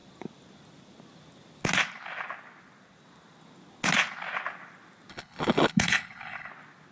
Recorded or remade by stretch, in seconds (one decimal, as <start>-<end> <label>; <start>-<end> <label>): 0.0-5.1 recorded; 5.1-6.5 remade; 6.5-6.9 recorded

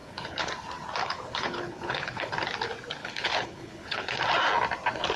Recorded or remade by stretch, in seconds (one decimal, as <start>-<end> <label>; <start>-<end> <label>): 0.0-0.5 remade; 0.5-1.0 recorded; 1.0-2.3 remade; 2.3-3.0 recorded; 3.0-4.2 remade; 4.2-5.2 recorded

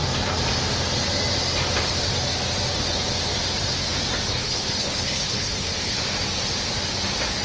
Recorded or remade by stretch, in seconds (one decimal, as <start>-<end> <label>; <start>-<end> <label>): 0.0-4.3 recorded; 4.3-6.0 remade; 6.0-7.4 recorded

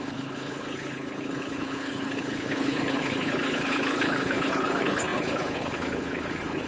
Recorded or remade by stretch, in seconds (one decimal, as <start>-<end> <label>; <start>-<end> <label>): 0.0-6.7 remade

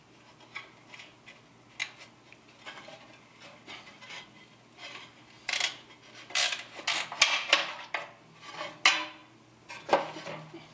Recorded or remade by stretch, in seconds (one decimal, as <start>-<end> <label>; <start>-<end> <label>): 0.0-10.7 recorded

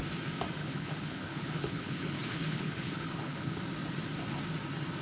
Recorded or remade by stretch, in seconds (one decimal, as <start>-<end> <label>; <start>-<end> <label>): 0.0-0.6 recorded; 0.6-3.6 remade; 3.6-5.0 recorded